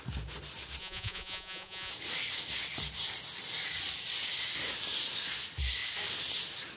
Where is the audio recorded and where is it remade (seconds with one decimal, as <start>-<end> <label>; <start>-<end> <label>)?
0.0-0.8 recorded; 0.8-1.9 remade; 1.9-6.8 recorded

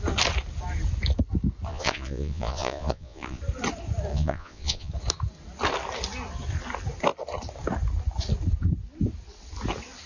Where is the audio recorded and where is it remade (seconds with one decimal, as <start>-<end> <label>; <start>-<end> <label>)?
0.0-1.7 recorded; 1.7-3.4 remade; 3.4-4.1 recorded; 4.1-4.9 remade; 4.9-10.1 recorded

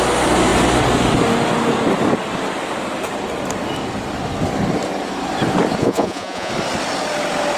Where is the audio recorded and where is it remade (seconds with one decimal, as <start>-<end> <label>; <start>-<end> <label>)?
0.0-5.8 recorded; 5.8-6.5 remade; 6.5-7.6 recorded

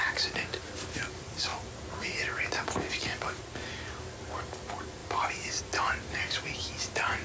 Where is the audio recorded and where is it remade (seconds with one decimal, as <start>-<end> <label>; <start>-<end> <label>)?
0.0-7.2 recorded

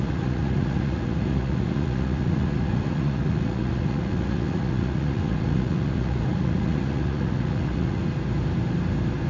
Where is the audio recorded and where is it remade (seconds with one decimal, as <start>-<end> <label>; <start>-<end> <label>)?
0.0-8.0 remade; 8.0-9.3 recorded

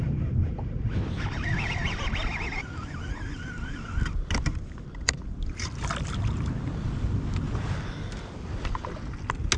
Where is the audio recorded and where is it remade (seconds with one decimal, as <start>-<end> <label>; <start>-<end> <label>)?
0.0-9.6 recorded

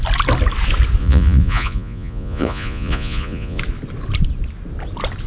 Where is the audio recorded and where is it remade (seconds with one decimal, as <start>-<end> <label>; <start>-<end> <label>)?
0.0-1.0 recorded; 1.0-3.6 remade; 3.6-5.3 recorded